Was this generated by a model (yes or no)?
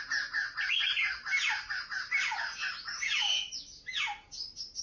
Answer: no